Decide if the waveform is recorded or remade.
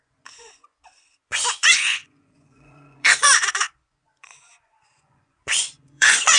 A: remade